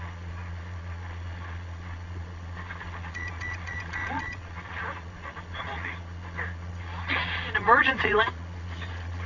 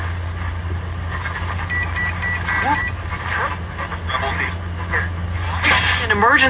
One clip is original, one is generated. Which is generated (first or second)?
first